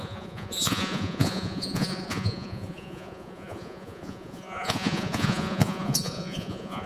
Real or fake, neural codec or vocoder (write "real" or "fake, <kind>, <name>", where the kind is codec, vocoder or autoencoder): fake, vocoder, Vocos